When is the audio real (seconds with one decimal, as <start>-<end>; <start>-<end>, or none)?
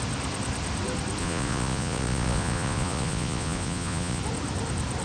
0.0-1.2; 4.2-5.0